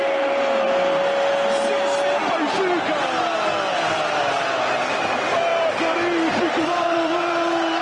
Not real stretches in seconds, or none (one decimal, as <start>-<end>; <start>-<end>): none